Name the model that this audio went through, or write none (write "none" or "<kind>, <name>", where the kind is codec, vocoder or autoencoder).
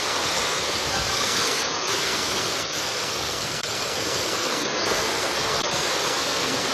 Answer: codec, SNAC